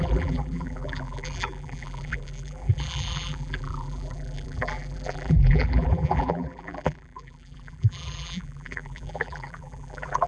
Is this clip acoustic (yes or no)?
no